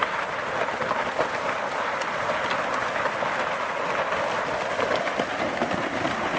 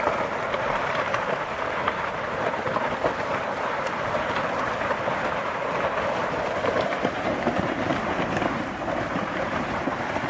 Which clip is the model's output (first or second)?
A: second